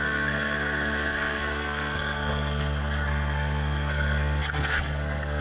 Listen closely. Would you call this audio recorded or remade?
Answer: remade